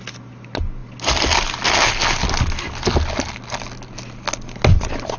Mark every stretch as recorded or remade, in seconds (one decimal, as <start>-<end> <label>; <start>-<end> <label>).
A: 0.0-5.2 recorded